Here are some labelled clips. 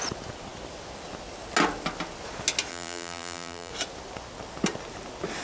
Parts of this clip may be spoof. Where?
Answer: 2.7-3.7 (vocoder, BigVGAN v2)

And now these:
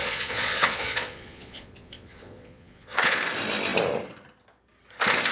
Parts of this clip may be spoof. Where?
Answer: 0.0-3.2 (vocoder, Vocos)